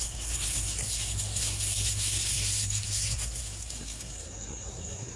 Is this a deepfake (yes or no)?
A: yes